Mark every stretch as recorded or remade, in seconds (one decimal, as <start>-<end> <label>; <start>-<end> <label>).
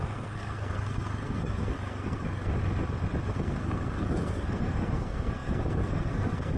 0.0-2.5 remade; 2.5-3.3 recorded; 3.3-6.6 remade